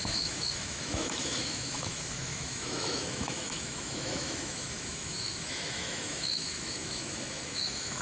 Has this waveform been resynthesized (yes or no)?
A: yes